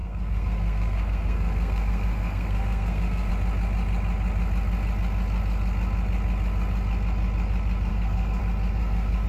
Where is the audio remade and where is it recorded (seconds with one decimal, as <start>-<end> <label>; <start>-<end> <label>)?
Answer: 0.0-3.3 remade; 3.3-7.9 recorded; 7.9-8.4 remade; 8.4-8.8 recorded; 8.8-9.3 remade